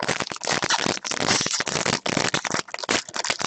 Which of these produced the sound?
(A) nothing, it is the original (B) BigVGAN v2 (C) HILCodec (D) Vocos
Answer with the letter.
A